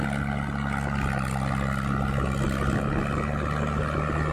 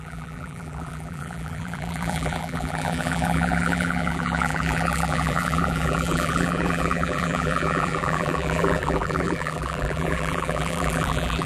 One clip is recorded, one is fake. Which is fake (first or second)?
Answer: second